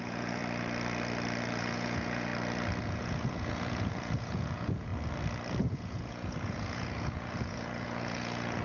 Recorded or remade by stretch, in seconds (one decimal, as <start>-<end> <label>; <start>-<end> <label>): 0.0-0.4 remade; 0.4-1.6 recorded; 1.6-2.3 remade; 2.3-2.8 recorded; 2.8-4.9 remade; 4.9-5.6 recorded; 5.6-8.6 remade